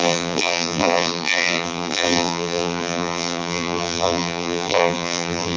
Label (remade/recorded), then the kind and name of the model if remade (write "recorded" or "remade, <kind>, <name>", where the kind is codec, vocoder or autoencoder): remade, vocoder, BigVGAN v2